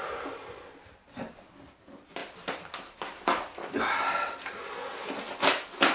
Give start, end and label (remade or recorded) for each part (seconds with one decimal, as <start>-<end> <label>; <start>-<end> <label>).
0.0-5.9 recorded